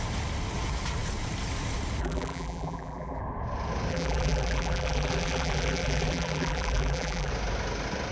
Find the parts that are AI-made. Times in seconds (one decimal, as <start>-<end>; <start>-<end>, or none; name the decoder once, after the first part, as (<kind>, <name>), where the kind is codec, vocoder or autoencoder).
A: 2.0-3.2 (vocoder, BigVGAN v2); 3.9-7.3